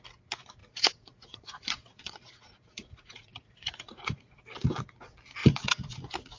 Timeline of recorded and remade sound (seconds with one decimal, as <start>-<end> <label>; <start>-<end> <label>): 0.0-0.6 recorded; 0.6-4.4 remade; 4.4-5.4 recorded; 5.4-5.9 remade; 5.9-6.4 recorded